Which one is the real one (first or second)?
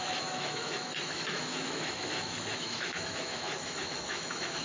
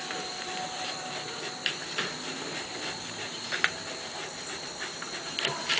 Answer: second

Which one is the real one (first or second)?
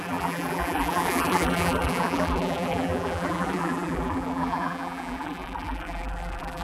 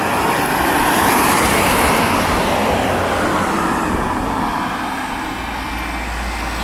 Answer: second